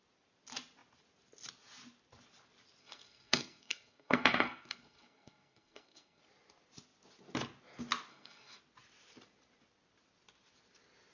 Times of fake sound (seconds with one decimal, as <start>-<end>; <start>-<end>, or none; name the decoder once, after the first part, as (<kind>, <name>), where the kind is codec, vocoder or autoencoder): 2.8-6.2 (codec, SNAC); 8.1-8.6